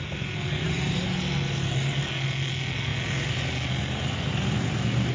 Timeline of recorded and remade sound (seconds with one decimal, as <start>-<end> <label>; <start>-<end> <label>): 0.0-5.1 recorded

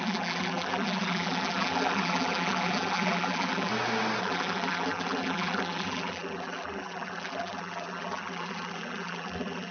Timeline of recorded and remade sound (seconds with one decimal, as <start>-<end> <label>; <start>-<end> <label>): 0.0-3.7 remade; 3.7-4.2 recorded; 4.2-9.7 remade